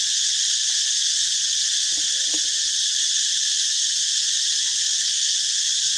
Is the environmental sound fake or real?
real